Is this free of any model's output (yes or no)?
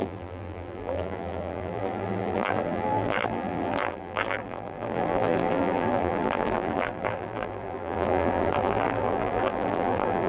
no